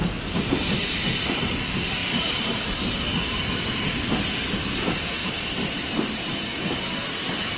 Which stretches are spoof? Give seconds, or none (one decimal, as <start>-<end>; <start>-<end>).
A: none